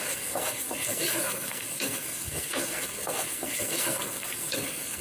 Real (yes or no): no